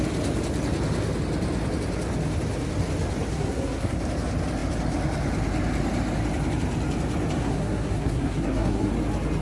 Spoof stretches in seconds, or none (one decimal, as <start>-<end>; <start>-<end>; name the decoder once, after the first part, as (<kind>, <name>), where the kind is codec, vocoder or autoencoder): 3.3-4.0 (codec, SNAC); 7.4-8.9